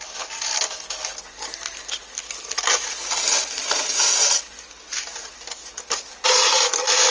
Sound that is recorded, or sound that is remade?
recorded